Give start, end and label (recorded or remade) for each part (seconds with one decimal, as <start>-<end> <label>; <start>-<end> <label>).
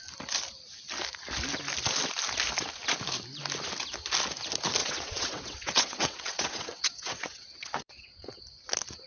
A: 0.0-4.8 recorded; 4.8-8.4 remade; 8.4-9.1 recorded